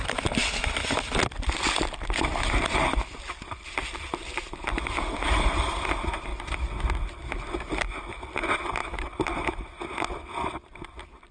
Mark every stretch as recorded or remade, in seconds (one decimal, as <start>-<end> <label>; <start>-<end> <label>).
0.0-11.3 recorded